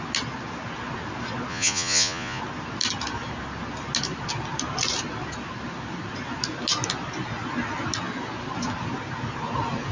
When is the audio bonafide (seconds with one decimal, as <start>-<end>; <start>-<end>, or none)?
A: 0.0-1.5; 2.4-9.9